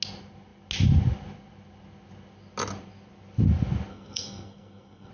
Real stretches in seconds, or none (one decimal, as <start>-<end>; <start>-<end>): 0.0-3.9